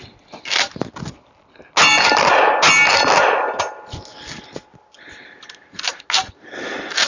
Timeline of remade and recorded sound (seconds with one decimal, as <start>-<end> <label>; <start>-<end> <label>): 0.0-7.1 recorded

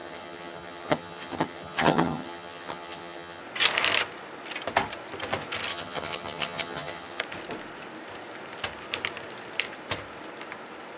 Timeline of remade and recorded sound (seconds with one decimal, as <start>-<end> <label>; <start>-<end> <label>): 0.0-3.4 remade; 3.4-5.7 recorded; 5.7-7.2 remade; 7.2-11.0 recorded